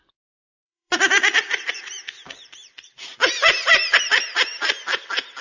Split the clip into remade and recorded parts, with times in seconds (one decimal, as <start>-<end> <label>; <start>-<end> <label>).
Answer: 0.0-4.5 remade; 4.5-5.0 recorded; 5.0-5.4 remade